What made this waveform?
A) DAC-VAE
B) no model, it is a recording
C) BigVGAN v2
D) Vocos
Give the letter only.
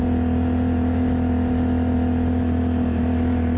B